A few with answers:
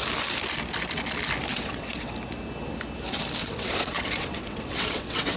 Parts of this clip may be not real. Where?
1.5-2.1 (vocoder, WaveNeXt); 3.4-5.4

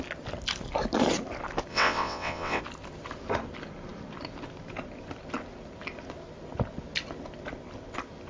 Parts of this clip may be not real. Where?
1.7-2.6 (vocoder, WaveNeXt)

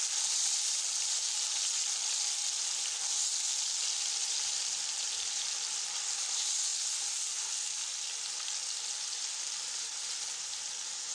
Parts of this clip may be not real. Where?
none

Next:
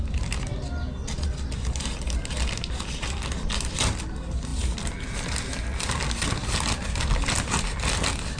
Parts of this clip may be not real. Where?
none

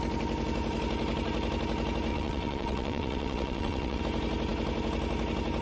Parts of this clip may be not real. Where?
2.1-4.0 (vocoder, WaveNeXt)

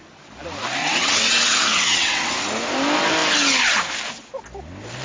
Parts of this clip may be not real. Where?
0.8-2.3 (vocoder, WaveNeXt)